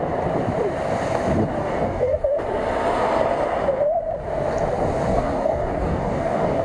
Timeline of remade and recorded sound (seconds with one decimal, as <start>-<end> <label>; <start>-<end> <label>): 0.0-1.6 recorded; 1.6-2.4 remade; 2.4-5.1 recorded; 5.1-6.6 remade